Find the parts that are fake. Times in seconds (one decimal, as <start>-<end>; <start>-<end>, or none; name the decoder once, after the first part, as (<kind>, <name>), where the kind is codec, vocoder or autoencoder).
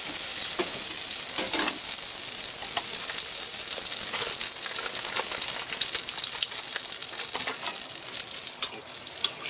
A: none